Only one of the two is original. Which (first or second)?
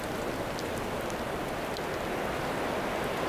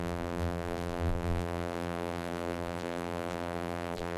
first